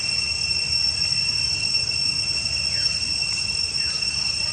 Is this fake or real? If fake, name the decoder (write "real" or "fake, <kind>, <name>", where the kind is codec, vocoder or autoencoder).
real